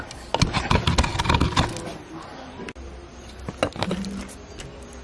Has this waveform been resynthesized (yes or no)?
no